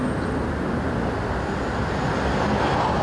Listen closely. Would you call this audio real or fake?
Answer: real